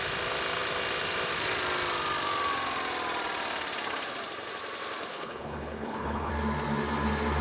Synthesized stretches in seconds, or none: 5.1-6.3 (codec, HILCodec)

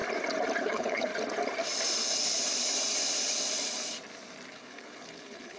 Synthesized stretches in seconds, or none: 0.6-1.1 (codec, HILCodec); 4.5-5.6

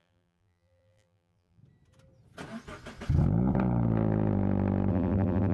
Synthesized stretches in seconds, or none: 0.0-1.6 (vocoder, BigVGAN v2); 4.9-5.5

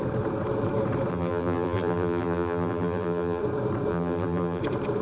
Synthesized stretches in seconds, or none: 1.1-3.4 (vocoder, BigVGAN v2); 3.9-4.6

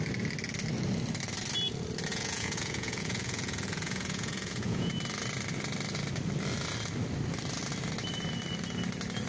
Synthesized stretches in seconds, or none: 2.1-4.9 (vocoder, Vocos)

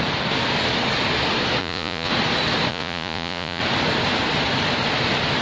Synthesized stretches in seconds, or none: 1.6-2.1 (vocoder, Vocos); 2.7-3.6

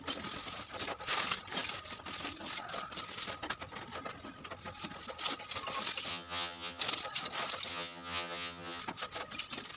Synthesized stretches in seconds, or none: 6.1-6.8 (vocoder, HiFi-GAN); 7.7-8.8